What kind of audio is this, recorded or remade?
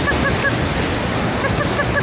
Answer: recorded